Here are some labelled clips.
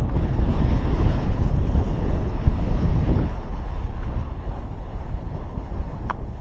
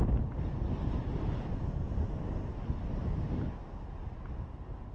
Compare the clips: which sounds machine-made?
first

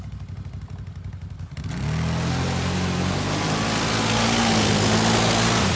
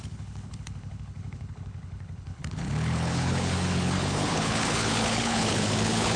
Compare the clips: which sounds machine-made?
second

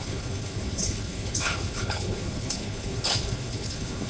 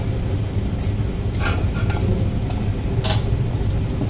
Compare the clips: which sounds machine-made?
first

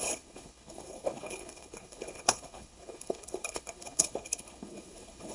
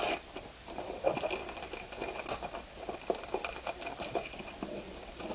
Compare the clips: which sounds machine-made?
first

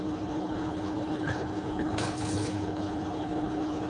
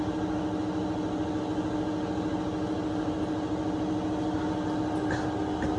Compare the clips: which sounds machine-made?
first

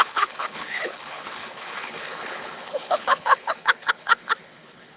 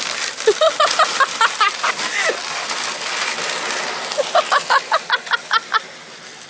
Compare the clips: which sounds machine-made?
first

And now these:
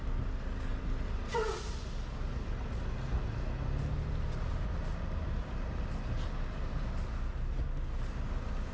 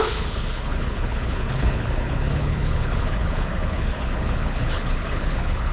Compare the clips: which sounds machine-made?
second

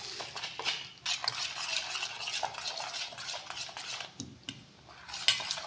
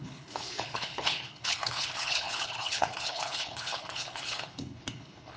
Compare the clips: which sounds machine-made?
second